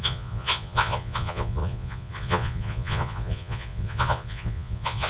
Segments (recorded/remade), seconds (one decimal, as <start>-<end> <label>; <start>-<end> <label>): 0.0-5.1 remade